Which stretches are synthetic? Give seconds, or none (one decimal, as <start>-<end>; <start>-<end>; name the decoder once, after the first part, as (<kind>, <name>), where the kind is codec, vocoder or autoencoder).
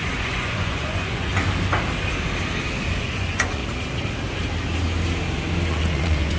0.0-1.3 (vocoder, Vocos); 3.0-3.6; 5.7-6.4